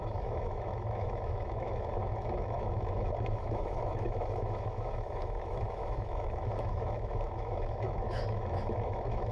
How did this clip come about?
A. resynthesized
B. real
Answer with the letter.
A